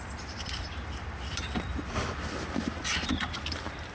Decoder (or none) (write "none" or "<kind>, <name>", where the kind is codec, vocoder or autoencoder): vocoder, BigVGAN v2